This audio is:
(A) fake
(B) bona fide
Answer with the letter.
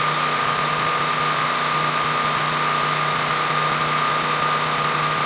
B